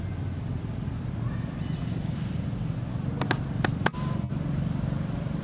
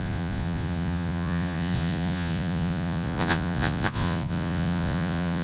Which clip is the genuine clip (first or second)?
first